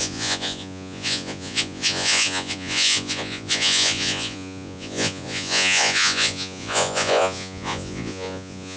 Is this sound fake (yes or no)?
yes